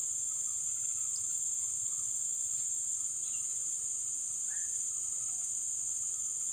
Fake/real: fake